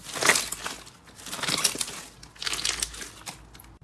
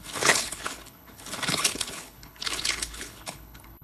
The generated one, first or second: second